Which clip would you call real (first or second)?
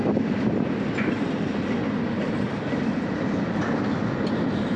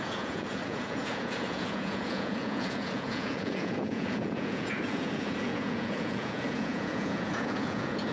first